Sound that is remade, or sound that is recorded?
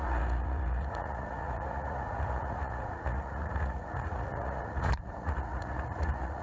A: remade